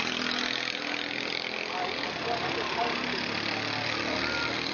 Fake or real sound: real